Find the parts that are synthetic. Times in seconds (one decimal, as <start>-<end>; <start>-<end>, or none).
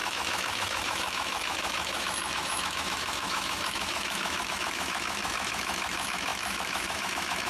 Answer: 0.0-7.5